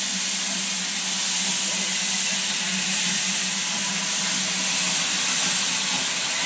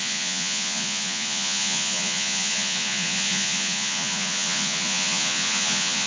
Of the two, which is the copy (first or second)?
second